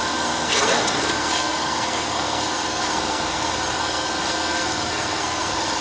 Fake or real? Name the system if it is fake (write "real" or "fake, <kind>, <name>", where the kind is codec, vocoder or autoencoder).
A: fake, codec, SNAC